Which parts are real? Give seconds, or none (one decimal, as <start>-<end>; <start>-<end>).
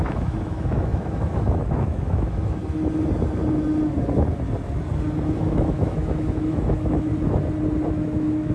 2.6-5.4; 7.1-7.9